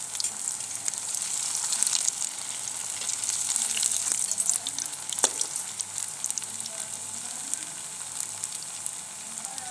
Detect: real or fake real